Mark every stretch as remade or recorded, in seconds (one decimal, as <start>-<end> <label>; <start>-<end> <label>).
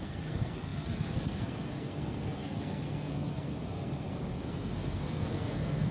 0.0-5.9 remade